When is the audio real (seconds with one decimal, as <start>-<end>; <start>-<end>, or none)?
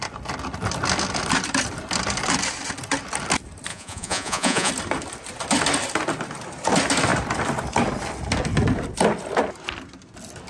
0.0-3.7; 4.7-10.5